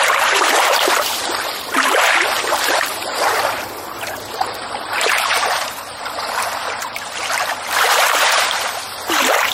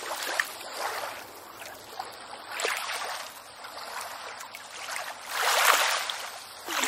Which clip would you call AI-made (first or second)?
first